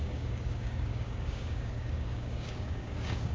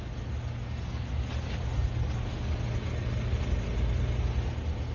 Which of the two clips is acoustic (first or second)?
second